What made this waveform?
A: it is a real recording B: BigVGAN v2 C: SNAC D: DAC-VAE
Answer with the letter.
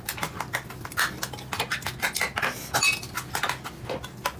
A